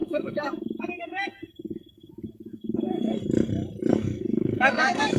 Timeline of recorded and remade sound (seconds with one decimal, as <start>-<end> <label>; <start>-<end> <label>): 0.0-2.1 remade; 2.1-2.5 recorded; 2.5-3.2 remade; 3.2-3.9 recorded; 3.9-5.2 remade